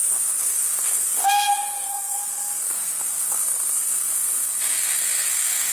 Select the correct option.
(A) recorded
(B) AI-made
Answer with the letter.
B